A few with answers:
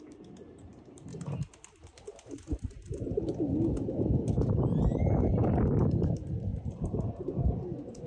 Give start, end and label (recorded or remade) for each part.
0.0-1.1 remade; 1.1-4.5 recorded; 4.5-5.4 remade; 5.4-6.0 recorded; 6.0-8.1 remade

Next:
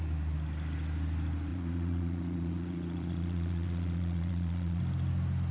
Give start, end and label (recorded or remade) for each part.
0.0-1.5 recorded; 1.5-4.8 remade; 4.8-5.5 recorded

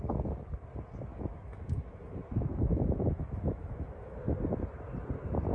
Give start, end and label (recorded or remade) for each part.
0.0-1.1 recorded; 1.1-4.2 remade; 4.2-5.5 recorded

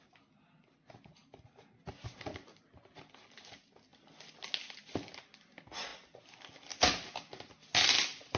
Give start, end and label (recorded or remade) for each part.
0.0-8.4 recorded

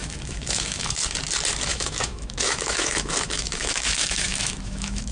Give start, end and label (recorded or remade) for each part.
0.0-1.0 remade; 1.0-1.7 recorded; 1.7-5.1 remade

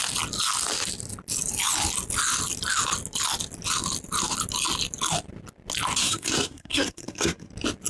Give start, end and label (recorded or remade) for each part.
0.0-6.0 recorded; 6.0-7.5 remade; 7.5-7.9 recorded

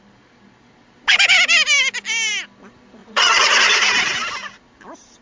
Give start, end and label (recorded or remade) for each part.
0.0-3.0 recorded; 3.0-3.6 remade; 3.6-5.2 recorded

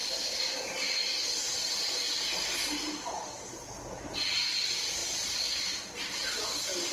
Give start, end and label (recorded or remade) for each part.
0.0-6.9 recorded